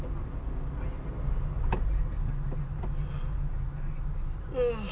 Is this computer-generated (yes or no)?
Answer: no